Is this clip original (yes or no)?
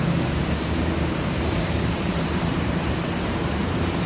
no